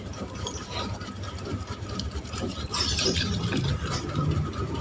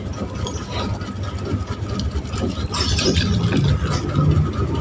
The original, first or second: second